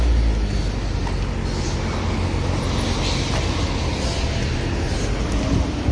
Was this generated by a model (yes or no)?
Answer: no